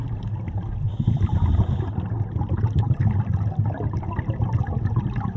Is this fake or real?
real